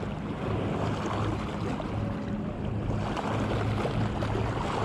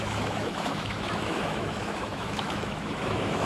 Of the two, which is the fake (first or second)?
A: second